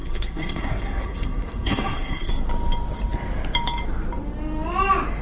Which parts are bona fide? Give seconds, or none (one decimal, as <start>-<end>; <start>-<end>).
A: 2.3-5.2